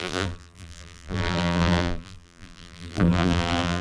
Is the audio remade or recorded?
remade